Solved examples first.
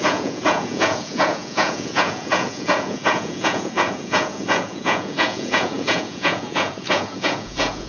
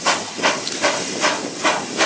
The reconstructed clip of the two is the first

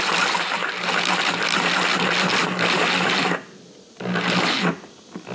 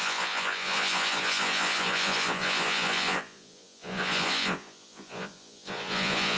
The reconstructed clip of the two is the second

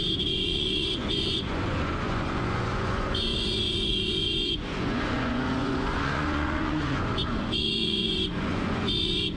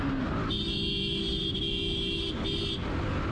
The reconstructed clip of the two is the first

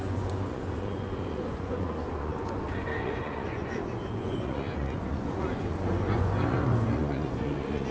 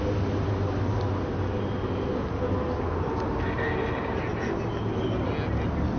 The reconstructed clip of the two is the first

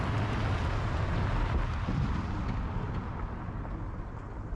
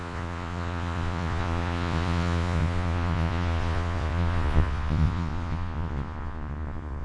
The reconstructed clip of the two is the second